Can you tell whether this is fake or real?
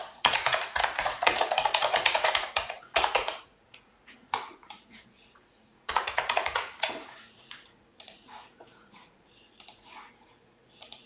fake